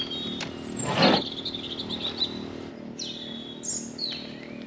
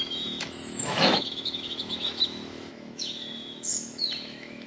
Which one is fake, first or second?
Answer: second